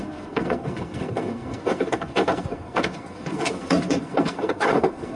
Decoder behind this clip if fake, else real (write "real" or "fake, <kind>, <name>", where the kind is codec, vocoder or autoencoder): fake, codec, SNAC